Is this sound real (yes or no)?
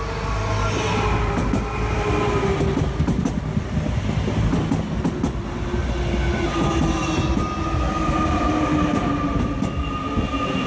yes